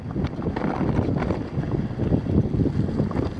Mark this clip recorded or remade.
recorded